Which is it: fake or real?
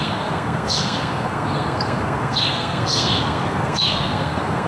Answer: fake